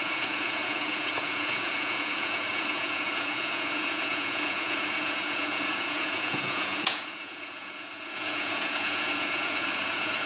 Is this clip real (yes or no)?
no